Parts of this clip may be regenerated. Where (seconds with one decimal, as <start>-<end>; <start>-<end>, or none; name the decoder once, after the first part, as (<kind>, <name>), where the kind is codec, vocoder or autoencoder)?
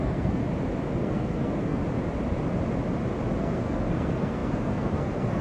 0.0-0.4 (codec, SNAC); 1.0-1.8; 3.4-5.4